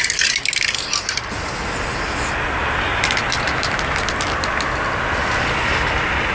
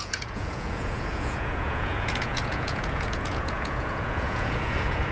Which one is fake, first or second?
second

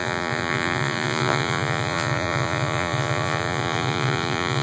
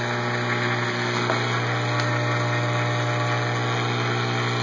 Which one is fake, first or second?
first